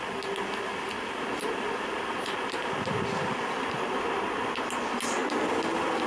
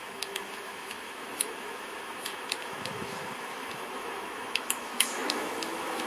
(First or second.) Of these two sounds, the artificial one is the second